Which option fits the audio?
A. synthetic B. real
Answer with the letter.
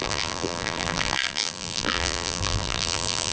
A